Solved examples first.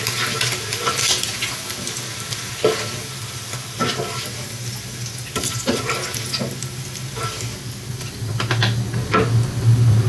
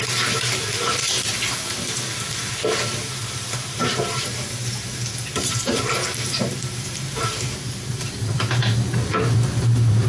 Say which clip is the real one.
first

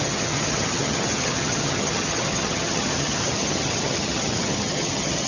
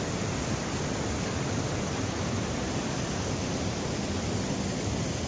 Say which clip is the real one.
second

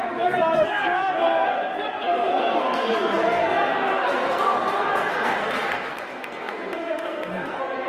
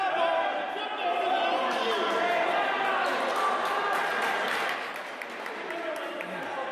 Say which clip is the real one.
second